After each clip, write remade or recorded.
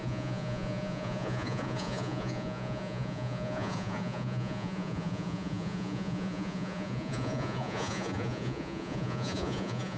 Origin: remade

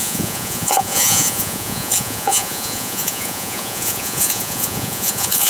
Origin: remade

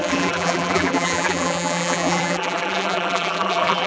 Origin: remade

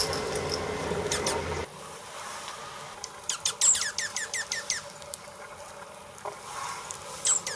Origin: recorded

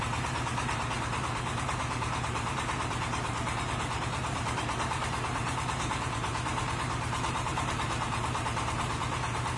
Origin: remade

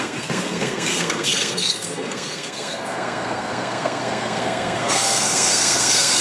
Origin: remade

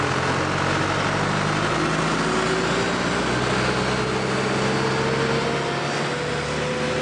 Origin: recorded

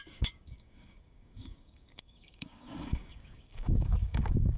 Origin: remade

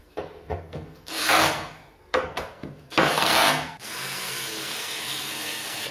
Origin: remade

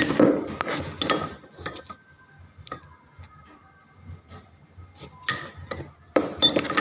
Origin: recorded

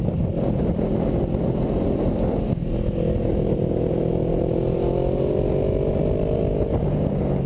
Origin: recorded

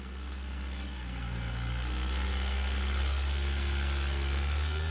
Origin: remade